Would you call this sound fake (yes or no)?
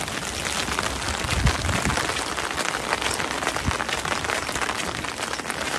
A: no